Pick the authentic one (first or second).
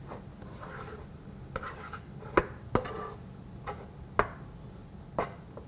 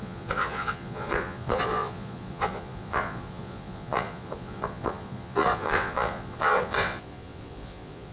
first